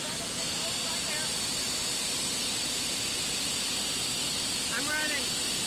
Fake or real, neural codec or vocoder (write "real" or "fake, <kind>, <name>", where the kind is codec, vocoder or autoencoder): real